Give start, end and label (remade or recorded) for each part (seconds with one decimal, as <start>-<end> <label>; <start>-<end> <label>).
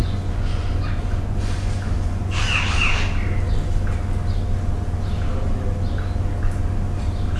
0.0-2.6 remade; 2.6-7.4 recorded